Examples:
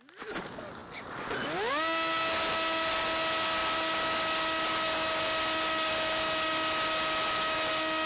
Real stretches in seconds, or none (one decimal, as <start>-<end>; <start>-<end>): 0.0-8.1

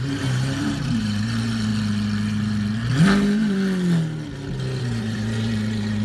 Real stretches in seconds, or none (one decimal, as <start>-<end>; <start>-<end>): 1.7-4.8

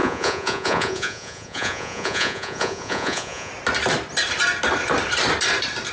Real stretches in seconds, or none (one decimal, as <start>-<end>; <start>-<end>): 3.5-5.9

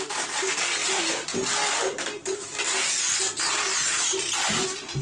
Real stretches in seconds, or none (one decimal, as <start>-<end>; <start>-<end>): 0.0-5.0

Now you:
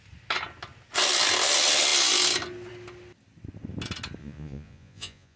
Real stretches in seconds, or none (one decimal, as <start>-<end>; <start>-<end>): 0.0-4.2